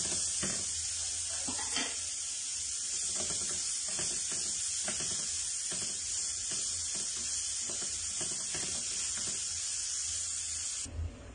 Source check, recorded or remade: recorded